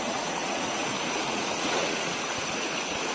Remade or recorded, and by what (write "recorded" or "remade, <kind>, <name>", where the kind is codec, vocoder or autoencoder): remade, vocoder, Vocos